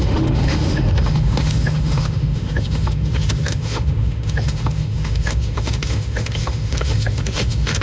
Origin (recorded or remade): remade